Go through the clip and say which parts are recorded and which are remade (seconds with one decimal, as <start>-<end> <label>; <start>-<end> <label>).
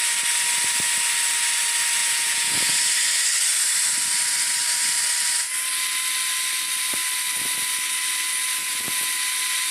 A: 0.0-2.0 recorded; 2.0-2.8 remade; 2.8-8.6 recorded; 8.6-9.1 remade; 9.1-9.7 recorded